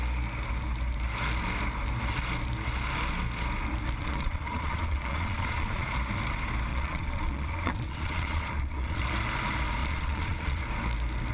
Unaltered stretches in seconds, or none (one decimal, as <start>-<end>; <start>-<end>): 0.0-4.0; 5.9-6.7; 9.0-9.8; 10.6-11.3